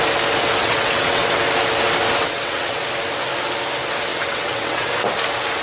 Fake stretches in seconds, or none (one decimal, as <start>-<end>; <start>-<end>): 0.6-1.4; 2.2-2.8; 4.1-4.9